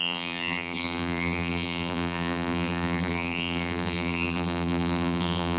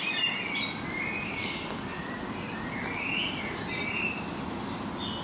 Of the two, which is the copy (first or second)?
first